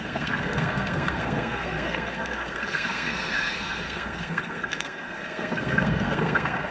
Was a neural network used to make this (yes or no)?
yes